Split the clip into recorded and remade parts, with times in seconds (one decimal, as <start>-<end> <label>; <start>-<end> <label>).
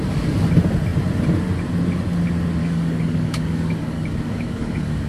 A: 0.0-2.6 recorded; 2.6-5.1 remade